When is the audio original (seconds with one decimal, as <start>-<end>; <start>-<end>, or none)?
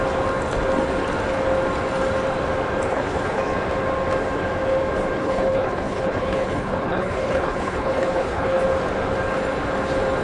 0.0-2.9; 3.4-5.2; 8.6-10.2